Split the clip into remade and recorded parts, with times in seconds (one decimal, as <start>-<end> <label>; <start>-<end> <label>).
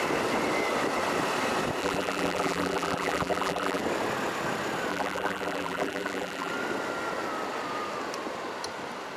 0.0-1.8 recorded; 1.8-3.8 remade; 3.8-4.9 recorded; 4.9-6.5 remade; 6.5-9.2 recorded